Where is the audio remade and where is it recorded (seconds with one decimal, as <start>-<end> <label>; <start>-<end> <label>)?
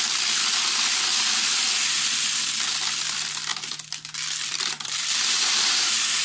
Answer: 0.0-3.5 recorded; 3.5-5.1 remade; 5.1-6.2 recorded